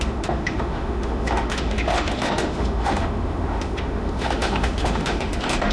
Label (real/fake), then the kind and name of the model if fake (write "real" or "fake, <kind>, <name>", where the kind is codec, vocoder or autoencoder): fake, autoencoder, DAC-VAE